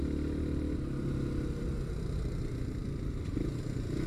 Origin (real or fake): real